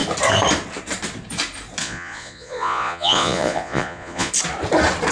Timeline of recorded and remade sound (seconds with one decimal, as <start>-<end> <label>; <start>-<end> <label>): 0.0-1.8 recorded; 1.8-4.3 remade; 4.3-5.1 recorded